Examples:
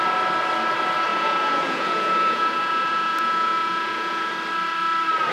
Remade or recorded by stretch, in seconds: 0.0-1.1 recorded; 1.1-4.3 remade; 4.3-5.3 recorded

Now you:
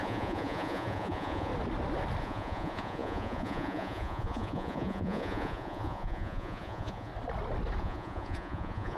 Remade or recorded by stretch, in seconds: 0.0-1.5 remade; 1.5-2.2 recorded; 2.2-7.1 remade; 7.1-7.8 recorded; 7.8-9.0 remade